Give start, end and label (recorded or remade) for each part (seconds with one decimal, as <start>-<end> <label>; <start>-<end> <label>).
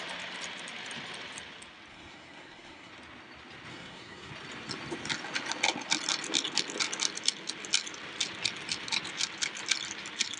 0.0-1.9 recorded; 1.9-2.9 remade; 2.9-3.7 recorded; 3.7-4.3 remade; 4.3-10.4 recorded